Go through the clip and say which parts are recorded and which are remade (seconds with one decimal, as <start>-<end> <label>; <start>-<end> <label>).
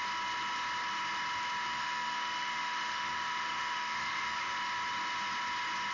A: 0.0-1.6 recorded; 1.6-4.5 remade; 4.5-5.9 recorded